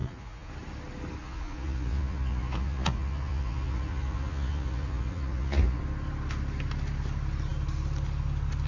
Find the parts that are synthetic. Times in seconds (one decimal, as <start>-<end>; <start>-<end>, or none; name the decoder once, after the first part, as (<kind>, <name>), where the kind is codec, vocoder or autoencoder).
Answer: 0.0-0.5 (vocoder, Vocos); 1.2-5.8